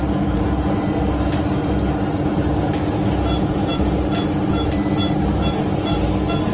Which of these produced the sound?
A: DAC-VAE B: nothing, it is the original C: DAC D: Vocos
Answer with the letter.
B